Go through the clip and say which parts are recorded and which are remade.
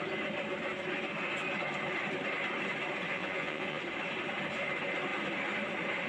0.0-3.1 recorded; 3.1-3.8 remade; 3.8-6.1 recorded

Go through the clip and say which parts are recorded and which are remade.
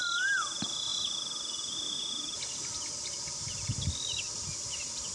0.0-5.1 recorded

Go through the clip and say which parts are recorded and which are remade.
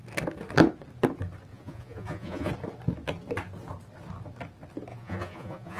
0.0-1.5 recorded; 1.5-2.5 remade; 2.5-4.9 recorded; 4.9-5.8 remade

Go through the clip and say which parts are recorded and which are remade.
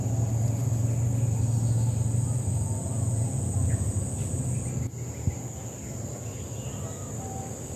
0.0-7.8 recorded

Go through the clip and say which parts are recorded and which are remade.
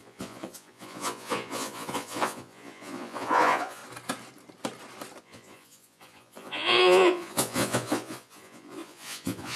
0.0-3.8 remade; 3.8-5.2 recorded; 5.2-9.6 remade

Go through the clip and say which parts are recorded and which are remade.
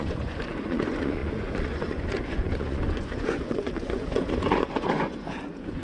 0.0-5.8 remade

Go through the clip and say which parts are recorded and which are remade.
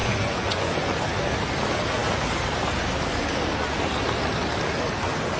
0.0-1.0 remade; 1.0-5.4 recorded